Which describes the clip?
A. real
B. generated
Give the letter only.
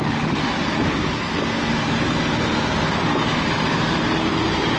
A